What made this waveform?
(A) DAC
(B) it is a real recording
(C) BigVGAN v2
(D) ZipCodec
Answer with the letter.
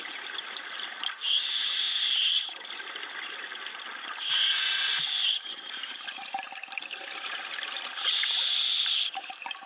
B